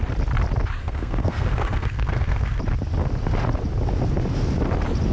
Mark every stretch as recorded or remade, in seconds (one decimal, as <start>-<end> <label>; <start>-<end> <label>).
0.0-0.8 recorded; 0.8-2.6 remade; 2.6-5.1 recorded